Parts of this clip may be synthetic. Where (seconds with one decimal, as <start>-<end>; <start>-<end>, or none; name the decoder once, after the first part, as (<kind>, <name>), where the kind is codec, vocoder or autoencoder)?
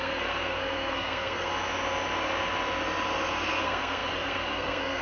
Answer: 0.0-1.5 (codec, SNAC); 3.6-5.0